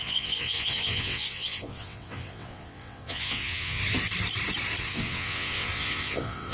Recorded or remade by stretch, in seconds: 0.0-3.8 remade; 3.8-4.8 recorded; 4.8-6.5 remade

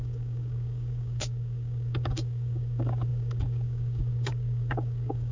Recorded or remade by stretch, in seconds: 0.0-5.3 remade

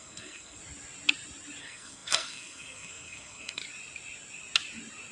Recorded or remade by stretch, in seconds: 0.0-0.6 remade; 0.6-1.6 recorded; 1.6-3.6 remade; 3.6-5.1 recorded